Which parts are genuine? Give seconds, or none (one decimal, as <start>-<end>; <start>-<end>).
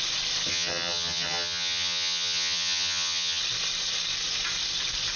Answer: 0.0-0.5; 3.4-5.2